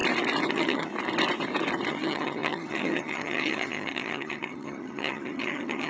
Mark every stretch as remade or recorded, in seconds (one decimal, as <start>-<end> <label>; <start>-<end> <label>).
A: 0.0-0.5 recorded; 0.5-0.9 remade; 0.9-1.9 recorded; 1.9-5.9 remade